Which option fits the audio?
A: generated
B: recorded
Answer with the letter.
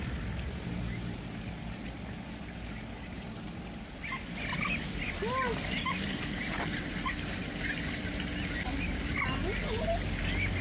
B